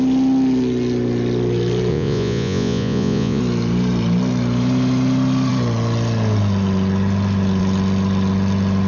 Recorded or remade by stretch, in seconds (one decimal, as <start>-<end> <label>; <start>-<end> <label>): 0.0-1.9 recorded; 1.9-3.4 remade; 3.4-8.9 recorded